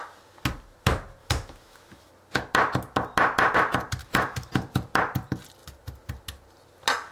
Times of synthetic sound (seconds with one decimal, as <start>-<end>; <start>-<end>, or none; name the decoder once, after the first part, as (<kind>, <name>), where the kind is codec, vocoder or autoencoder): 1.2-2.1 (autoencoder, DAC-VAE); 4.0-4.5